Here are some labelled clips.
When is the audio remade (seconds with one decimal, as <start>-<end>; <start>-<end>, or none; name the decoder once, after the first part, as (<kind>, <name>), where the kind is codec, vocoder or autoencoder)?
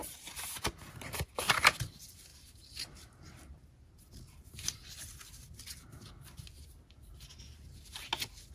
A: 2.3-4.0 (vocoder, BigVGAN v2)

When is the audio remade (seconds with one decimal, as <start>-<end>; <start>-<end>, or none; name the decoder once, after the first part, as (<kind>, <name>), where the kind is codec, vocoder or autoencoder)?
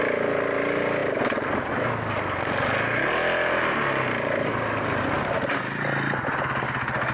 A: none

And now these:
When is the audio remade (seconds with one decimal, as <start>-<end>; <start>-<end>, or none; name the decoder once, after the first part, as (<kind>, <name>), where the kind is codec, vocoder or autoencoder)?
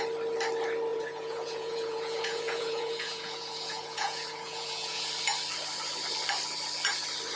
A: 0.9-5.1 (vocoder, Vocos)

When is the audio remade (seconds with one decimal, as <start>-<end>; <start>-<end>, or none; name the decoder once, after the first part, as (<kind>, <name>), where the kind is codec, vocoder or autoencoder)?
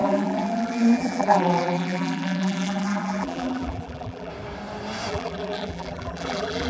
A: 0.0-4.3 (vocoder, BigVGAN v2); 5.1-6.7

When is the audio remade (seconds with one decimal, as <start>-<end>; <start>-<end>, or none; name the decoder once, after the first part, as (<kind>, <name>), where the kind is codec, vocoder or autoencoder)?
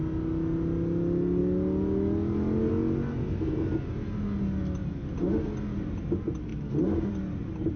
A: 6.5-7.1 (vocoder, BigVGAN v2)